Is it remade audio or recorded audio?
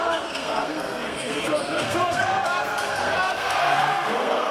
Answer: remade